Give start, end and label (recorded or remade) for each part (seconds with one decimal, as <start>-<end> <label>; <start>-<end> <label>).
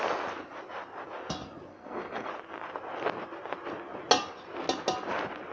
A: 0.0-1.7 recorded; 1.7-2.3 remade; 2.3-5.5 recorded